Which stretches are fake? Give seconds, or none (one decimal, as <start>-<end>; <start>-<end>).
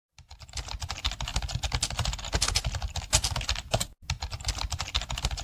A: 0.0-1.3; 4.5-5.4